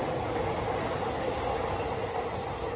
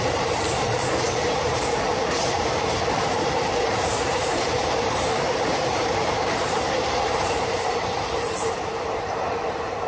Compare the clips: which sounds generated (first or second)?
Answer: second